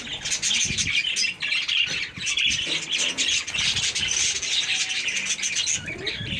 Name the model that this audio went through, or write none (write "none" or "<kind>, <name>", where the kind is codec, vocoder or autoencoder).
none